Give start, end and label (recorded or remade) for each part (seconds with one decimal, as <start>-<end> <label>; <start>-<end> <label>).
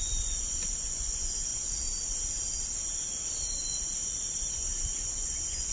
0.0-1.5 remade; 1.5-4.5 recorded; 4.5-5.7 remade